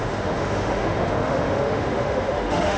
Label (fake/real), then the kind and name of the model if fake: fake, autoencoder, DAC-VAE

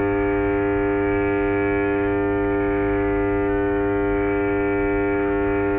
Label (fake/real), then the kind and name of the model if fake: fake, autoencoder, DAC-VAE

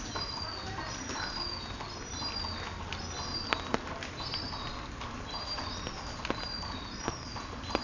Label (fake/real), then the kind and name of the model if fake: real